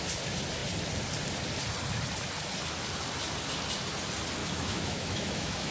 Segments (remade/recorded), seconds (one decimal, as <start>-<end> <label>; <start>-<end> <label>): 0.0-4.4 recorded; 4.4-5.7 remade